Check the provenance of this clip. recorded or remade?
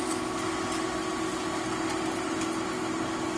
recorded